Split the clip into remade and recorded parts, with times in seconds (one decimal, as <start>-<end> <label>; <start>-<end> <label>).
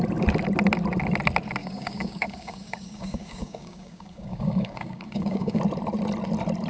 0.0-1.6 recorded; 1.6-5.6 remade; 5.6-6.7 recorded